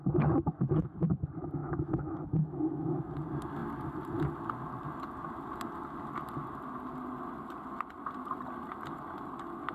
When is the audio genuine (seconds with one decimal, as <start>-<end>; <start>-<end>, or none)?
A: 0.0-1.6; 3.0-9.7